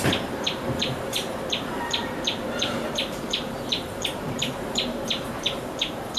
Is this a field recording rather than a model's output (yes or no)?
no